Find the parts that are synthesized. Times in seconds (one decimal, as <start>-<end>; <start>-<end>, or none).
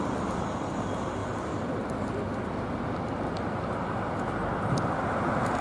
none